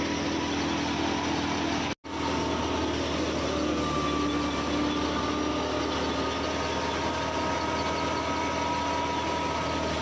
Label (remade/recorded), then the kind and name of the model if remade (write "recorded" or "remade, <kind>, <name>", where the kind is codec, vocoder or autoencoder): recorded